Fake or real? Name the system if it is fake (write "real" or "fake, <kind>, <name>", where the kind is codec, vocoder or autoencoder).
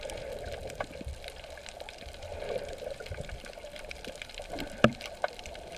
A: fake, vocoder, BigVGAN v2